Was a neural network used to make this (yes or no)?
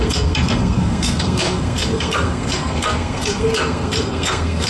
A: yes